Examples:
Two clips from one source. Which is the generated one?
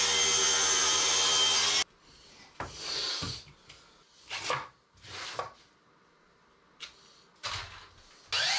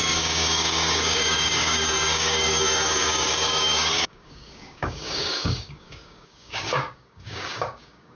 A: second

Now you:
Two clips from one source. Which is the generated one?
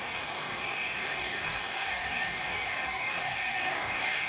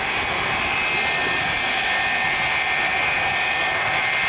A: first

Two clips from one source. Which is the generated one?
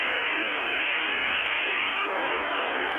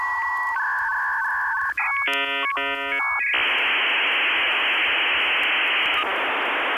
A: first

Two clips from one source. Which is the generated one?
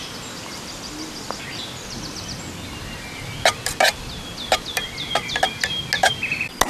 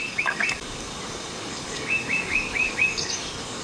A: second